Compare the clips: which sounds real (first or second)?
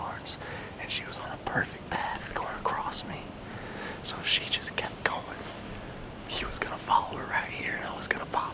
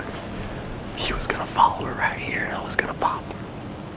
second